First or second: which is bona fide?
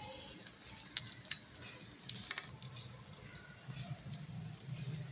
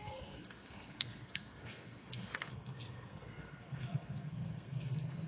first